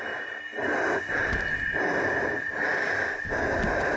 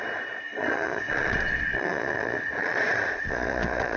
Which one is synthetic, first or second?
second